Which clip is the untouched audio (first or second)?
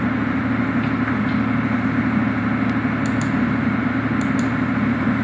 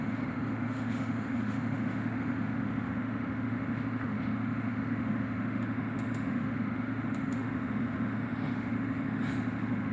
first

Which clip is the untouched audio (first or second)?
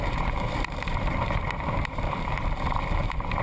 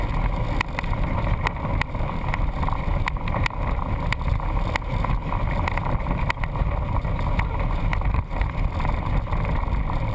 second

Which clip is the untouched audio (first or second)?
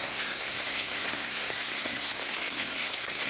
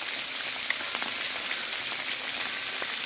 second